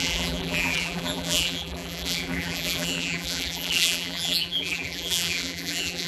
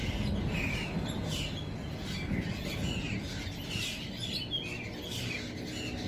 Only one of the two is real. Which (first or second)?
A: second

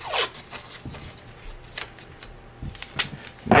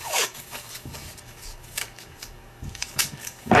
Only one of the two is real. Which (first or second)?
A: first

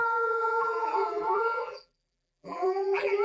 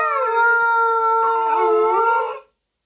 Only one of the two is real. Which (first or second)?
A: second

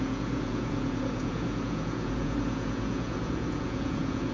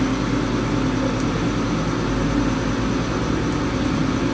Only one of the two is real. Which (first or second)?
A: second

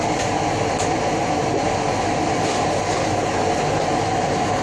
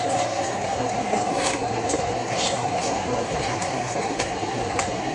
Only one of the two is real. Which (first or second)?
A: first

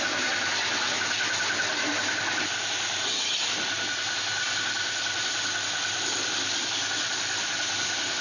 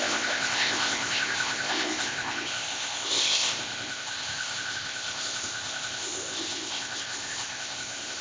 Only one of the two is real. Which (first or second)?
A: first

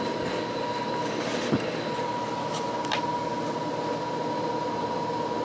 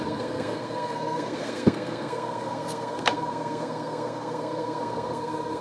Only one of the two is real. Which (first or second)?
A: first